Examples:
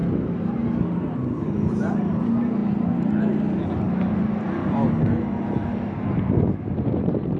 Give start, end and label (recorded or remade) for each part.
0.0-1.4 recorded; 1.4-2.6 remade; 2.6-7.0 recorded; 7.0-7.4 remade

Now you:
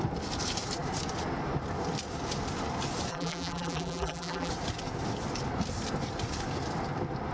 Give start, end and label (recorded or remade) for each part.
0.0-3.1 recorded; 3.1-4.5 remade; 4.5-7.3 recorded

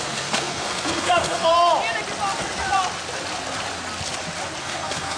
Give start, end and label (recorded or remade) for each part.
0.0-1.5 remade; 1.5-4.6 recorded; 4.6-5.2 remade

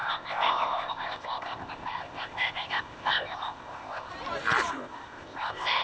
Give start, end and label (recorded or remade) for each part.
0.0-4.1 remade; 4.1-4.7 recorded; 4.7-5.8 remade

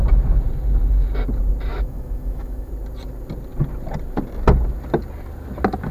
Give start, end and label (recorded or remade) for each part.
0.0-1.7 recorded; 1.7-2.7 remade; 2.7-5.9 recorded

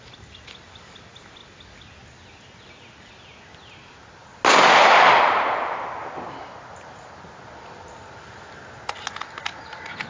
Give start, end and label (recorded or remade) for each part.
0.0-10.1 recorded

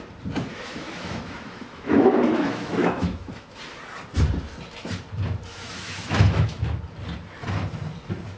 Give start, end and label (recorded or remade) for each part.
0.0-0.5 recorded; 0.5-3.6 remade; 3.6-5.5 recorded; 5.5-6.8 remade; 6.8-8.4 recorded